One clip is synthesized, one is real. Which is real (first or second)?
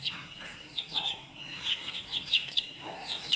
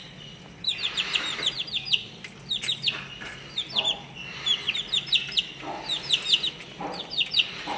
second